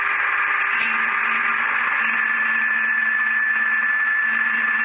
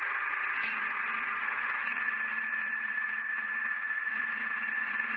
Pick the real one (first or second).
first